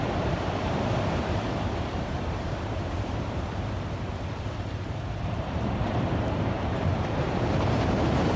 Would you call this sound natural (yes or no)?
no